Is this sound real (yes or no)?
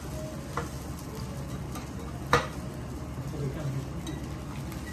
yes